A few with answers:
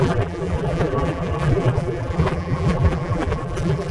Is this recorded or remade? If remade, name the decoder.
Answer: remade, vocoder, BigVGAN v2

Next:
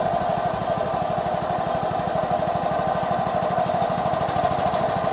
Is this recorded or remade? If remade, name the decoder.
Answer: recorded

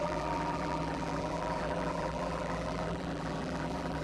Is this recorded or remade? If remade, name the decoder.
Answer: remade, vocoder, BigVGAN v2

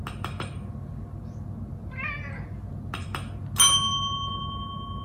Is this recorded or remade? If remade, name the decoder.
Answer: recorded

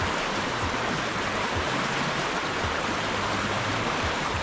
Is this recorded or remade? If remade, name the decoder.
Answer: remade, vocoder, BigVGAN v2